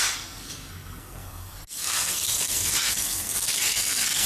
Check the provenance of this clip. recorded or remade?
remade